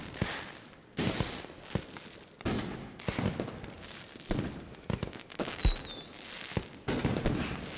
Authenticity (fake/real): real